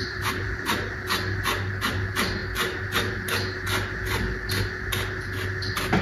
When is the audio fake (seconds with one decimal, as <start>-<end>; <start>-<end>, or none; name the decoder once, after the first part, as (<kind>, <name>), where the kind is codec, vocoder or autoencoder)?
0.0-0.7 (vocoder, BigVGAN v2)